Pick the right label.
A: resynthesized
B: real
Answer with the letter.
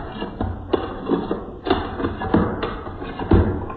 B